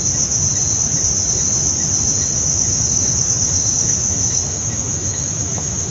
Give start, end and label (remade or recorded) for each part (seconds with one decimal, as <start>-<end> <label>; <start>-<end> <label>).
0.0-2.3 recorded; 2.3-5.9 remade